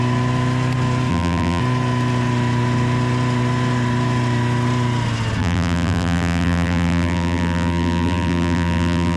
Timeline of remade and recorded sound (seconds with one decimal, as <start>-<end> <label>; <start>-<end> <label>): 0.0-1.1 recorded; 1.1-1.6 remade; 1.6-5.4 recorded; 5.4-9.2 remade